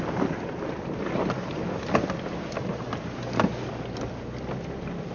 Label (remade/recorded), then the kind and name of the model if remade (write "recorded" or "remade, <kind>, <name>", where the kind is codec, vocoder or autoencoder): recorded